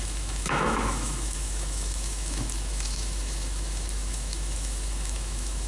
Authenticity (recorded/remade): remade